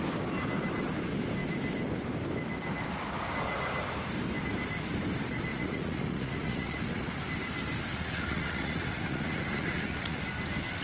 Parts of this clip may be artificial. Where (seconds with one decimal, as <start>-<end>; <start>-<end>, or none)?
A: 5.5-7.1; 7.9-10.2